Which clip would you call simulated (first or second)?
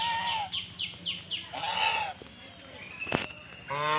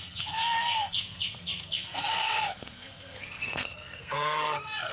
second